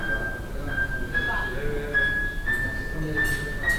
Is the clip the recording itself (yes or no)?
yes